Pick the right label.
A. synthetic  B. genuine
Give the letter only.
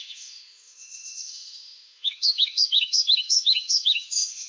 A